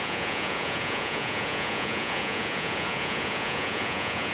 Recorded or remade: remade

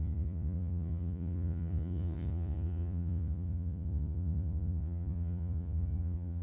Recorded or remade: remade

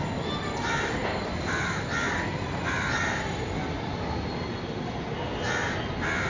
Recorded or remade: recorded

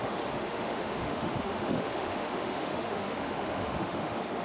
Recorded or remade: remade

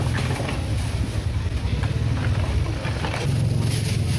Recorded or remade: recorded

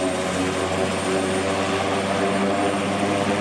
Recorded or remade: recorded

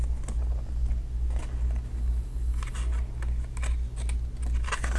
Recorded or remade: recorded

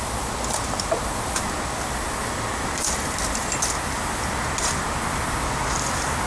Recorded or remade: recorded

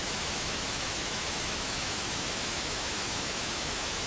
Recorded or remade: remade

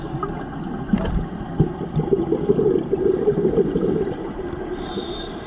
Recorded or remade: recorded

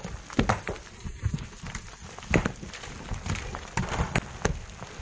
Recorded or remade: recorded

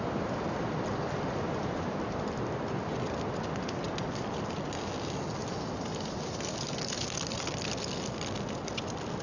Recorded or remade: recorded